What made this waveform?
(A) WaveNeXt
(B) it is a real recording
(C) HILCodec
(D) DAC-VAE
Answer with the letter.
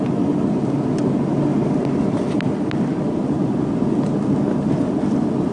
B